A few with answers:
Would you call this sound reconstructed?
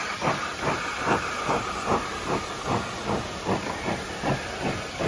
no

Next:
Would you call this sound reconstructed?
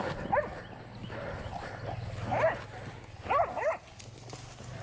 no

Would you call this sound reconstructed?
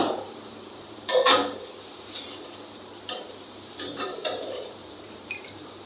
yes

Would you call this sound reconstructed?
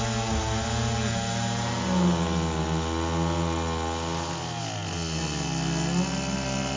no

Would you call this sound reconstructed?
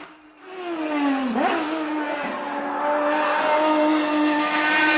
no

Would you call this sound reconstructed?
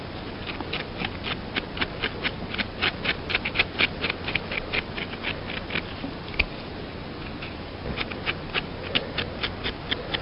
no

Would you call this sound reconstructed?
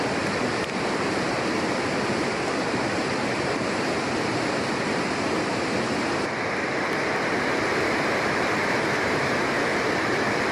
yes